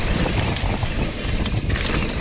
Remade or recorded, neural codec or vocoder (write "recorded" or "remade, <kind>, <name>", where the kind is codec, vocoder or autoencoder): recorded